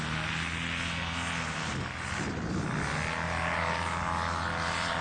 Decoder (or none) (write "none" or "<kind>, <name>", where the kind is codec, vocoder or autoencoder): none